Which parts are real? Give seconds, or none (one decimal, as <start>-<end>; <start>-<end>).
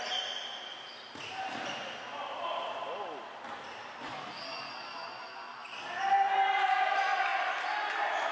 0.0-8.3